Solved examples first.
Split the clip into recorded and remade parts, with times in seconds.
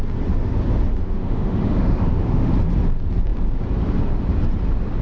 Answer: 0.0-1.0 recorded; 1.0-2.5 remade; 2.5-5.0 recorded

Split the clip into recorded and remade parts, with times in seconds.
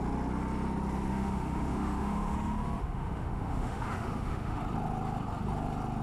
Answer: 0.0-1.1 recorded; 1.1-4.6 remade; 4.6-6.0 recorded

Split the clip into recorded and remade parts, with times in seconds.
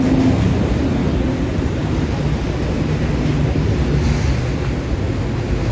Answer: 0.0-5.7 recorded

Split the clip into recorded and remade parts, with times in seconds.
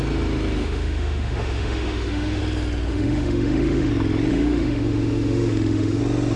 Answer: 0.0-0.6 recorded; 0.6-2.4 remade; 2.4-2.9 recorded; 2.9-3.9 remade; 3.9-4.3 recorded; 4.3-6.0 remade; 6.0-6.4 recorded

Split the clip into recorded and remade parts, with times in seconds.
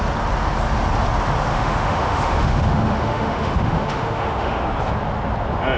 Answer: 0.0-1.5 recorded; 1.5-4.6 remade; 4.6-5.8 recorded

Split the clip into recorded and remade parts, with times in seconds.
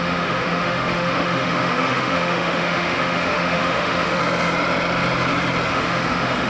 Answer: 0.0-4.2 remade; 4.2-5.7 recorded; 5.7-6.5 remade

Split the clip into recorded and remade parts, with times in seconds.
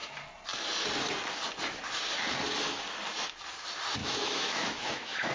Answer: 0.0-4.0 recorded; 4.0-5.3 remade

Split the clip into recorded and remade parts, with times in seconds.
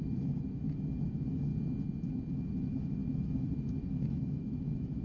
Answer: 0.0-1.5 remade; 1.5-2.3 recorded; 2.3-5.0 remade